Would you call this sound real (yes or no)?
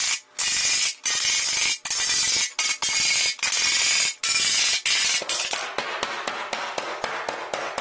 yes